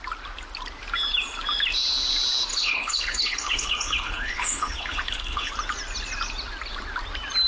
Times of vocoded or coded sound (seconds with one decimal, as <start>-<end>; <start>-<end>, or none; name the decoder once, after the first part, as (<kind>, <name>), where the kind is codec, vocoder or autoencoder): 2.5-5.5 (codec, HILCodec)